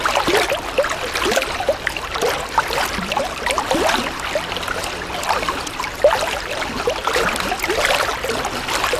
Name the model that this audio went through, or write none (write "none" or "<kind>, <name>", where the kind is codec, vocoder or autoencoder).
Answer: none